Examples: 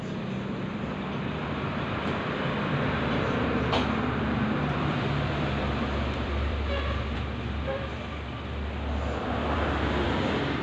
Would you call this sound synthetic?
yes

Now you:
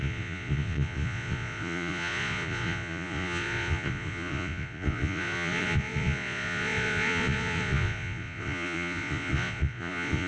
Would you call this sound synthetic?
yes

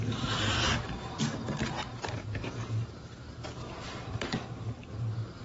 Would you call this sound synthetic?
yes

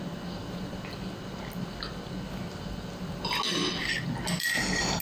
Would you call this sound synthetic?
no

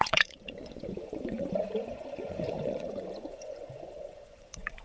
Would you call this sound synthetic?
yes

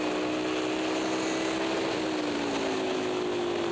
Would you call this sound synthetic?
no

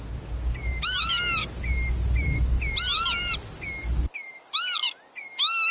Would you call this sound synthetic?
no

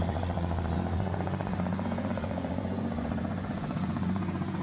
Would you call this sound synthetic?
yes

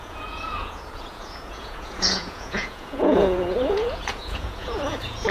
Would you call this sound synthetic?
yes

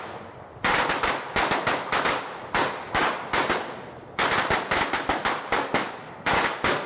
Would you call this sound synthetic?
no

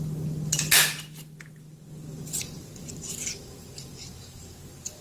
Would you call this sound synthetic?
no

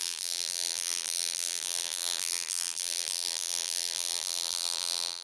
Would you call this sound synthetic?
yes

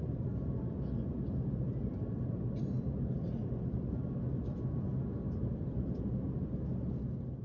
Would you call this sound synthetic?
no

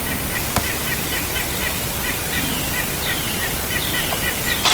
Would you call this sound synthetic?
no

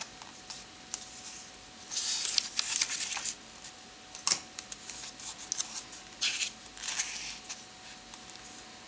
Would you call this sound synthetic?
no